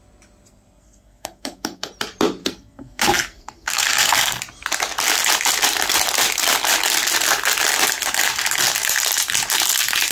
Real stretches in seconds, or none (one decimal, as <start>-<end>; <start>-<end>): 0.0-0.5; 1.9-2.4; 4.4-10.1